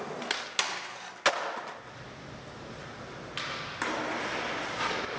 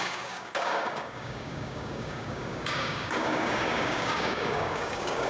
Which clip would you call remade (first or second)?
second